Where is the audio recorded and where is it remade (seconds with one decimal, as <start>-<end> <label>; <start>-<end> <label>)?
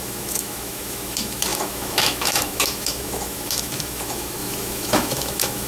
0.0-5.7 remade